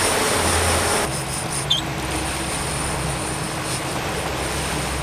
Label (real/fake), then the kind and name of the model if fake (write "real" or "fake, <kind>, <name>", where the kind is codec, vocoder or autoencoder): real